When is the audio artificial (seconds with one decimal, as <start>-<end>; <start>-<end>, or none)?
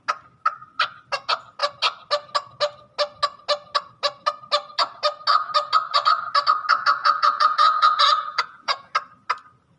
7.0-8.9